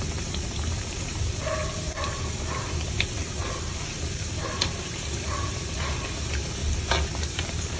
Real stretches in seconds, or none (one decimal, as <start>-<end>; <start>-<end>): 6.6-7.3